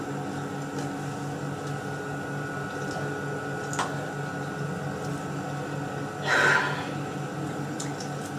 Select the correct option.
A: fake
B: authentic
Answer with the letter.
B